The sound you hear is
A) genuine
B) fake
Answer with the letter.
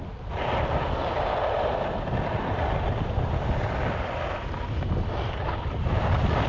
A